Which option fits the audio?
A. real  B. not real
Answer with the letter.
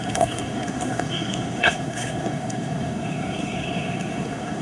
B